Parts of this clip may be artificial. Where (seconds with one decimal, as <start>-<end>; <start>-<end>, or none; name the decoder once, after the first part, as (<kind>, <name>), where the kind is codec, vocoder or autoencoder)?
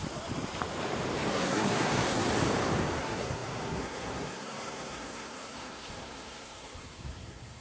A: 1.3-2.3 (codec, SNAC); 3.0-7.6